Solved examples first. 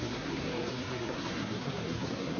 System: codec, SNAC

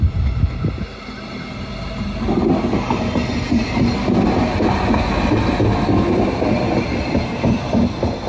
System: none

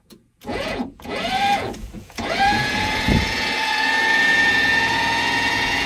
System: vocoder, Vocos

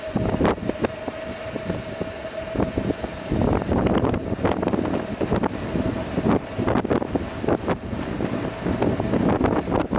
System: none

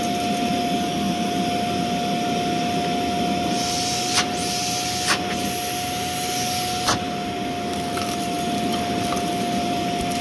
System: none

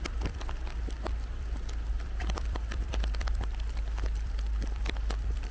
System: vocoder, BigVGAN v2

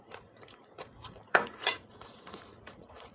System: vocoder, Vocos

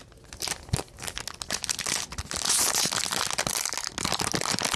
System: none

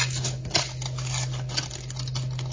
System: none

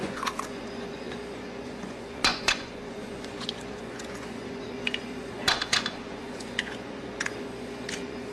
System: vocoder, Vocos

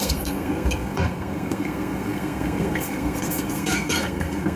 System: codec, SNAC